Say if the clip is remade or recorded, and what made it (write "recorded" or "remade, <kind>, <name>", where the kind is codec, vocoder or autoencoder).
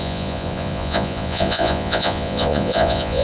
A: remade, vocoder, Vocos